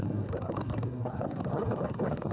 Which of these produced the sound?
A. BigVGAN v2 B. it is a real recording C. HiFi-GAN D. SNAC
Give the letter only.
D